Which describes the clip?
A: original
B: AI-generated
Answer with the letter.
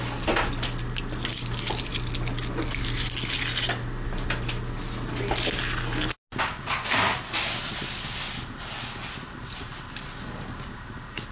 A